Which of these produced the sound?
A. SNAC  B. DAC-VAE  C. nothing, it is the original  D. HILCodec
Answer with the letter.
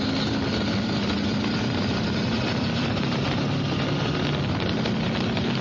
C